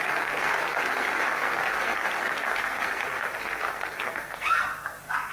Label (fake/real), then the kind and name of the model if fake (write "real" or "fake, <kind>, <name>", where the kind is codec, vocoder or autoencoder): fake, codec, SNAC